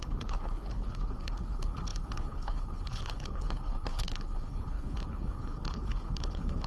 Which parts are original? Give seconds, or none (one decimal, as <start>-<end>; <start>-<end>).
none